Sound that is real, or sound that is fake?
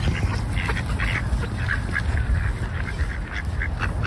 real